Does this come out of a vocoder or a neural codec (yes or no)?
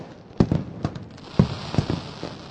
no